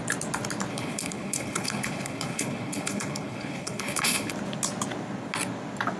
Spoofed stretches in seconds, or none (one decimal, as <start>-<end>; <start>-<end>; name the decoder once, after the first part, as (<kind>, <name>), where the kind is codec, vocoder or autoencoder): 0.7-4.3 (codec, HILCodec)